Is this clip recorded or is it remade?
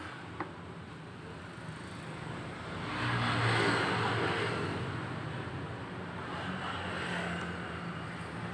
recorded